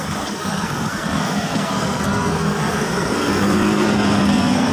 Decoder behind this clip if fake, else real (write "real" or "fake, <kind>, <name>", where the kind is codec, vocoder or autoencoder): fake, codec, SNAC